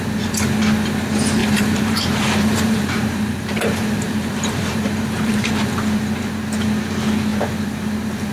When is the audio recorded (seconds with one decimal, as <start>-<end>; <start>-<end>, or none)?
0.0-1.4; 5.5-7.3